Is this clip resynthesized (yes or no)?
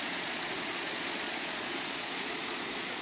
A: yes